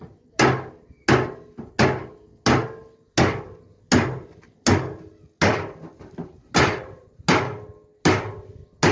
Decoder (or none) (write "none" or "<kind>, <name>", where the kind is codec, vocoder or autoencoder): none